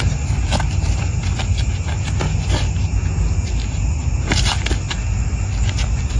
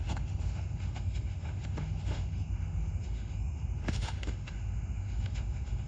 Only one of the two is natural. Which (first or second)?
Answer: first